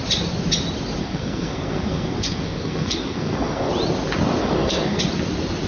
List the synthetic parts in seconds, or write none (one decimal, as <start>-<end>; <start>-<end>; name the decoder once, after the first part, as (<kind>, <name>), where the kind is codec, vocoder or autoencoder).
1.0-3.7 (codec, SNAC); 4.4-5.0